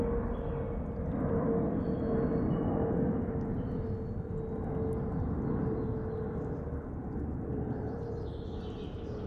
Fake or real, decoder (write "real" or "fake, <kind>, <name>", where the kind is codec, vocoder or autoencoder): real